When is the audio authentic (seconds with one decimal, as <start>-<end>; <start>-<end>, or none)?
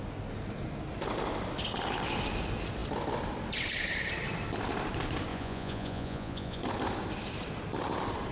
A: 0.0-5.3; 6.6-8.3